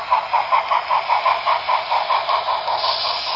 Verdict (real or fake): real